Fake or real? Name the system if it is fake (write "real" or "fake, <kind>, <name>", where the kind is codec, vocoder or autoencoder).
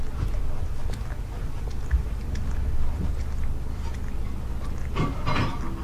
real